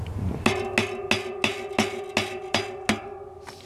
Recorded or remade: recorded